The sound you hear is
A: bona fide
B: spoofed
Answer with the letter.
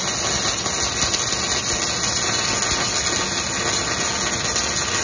A